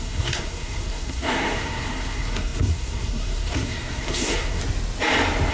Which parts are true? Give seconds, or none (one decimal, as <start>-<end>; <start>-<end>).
4.6-5.5